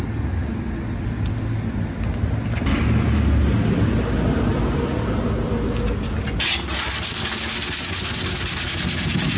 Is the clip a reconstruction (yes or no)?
no